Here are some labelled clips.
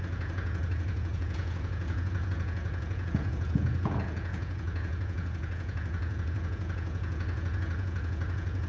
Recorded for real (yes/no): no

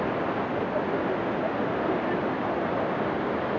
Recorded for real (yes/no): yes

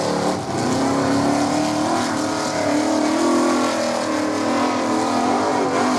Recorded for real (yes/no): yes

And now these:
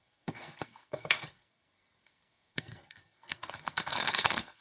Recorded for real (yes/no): no